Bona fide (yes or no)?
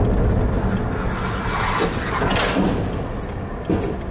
yes